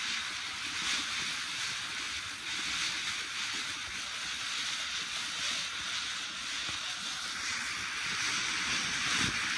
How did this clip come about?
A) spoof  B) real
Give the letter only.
B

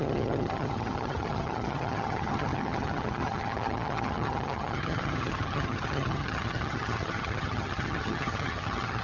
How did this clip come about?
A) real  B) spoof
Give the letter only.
B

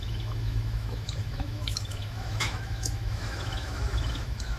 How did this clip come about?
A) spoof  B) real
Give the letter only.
A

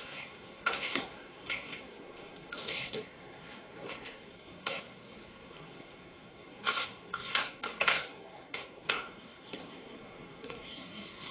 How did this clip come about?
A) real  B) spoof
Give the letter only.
B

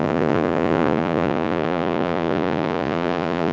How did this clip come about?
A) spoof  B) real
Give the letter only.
A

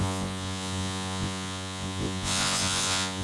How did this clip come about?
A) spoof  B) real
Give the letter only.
A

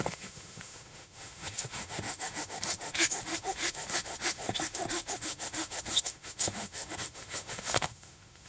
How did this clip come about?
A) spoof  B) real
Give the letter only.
A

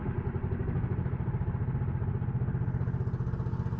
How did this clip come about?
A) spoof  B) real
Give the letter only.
B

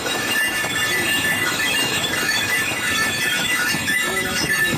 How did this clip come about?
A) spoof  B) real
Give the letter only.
A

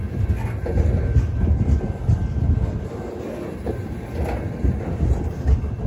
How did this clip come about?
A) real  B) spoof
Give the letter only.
A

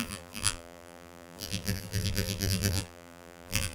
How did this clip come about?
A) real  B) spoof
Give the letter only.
B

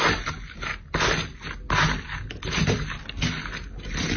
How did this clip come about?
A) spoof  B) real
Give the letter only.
B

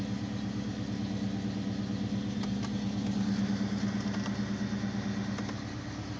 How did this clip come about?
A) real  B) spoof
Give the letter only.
A